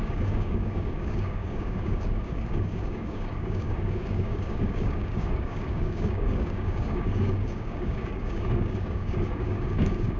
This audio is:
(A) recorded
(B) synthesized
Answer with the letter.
B